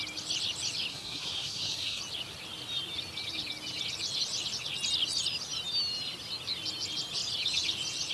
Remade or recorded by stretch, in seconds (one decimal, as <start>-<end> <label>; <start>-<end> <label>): 0.0-0.9 recorded; 0.9-2.0 remade; 2.0-8.1 recorded